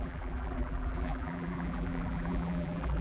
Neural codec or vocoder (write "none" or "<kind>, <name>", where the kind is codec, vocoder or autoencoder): vocoder, BigVGAN v2